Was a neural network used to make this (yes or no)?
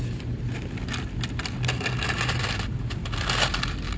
no